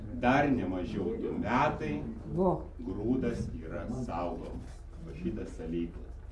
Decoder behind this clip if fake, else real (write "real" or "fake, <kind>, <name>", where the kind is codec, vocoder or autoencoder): real